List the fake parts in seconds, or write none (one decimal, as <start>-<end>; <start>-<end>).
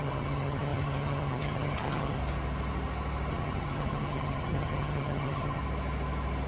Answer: 0.0-2.2; 3.3-5.6